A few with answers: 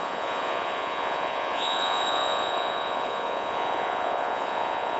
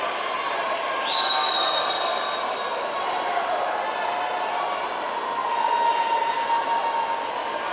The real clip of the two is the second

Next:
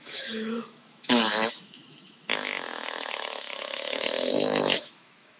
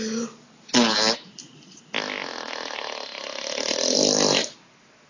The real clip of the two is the second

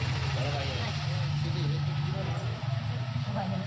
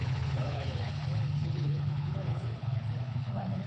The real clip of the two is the first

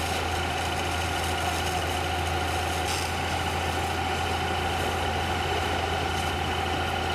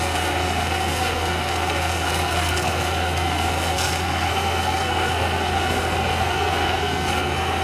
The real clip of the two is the first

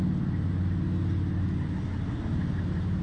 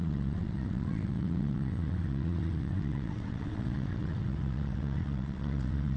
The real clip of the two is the first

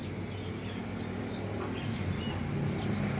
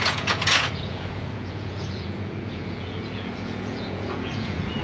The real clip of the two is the first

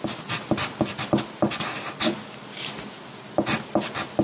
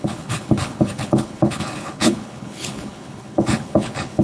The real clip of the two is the first